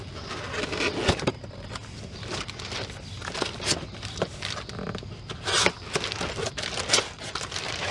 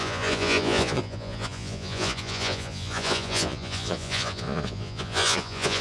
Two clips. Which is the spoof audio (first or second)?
second